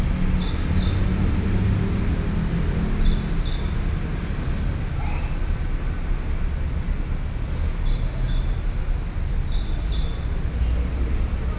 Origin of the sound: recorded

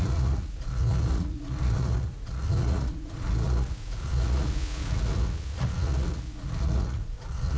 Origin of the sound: remade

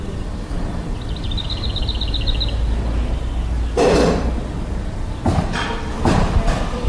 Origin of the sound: recorded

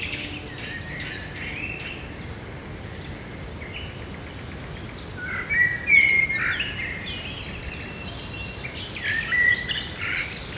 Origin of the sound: recorded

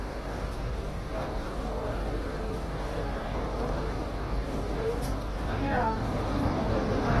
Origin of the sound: remade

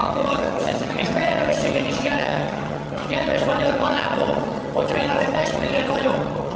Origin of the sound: remade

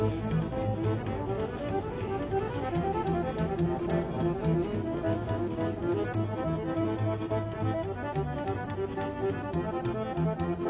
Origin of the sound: recorded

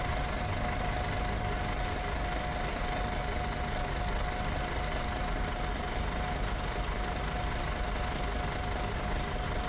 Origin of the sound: recorded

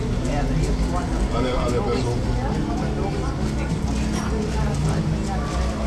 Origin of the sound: recorded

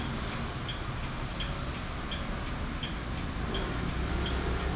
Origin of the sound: recorded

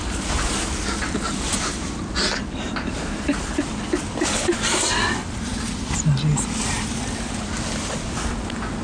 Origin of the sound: recorded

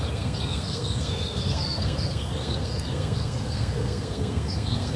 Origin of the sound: remade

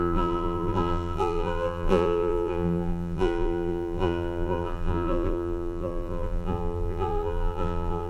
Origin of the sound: remade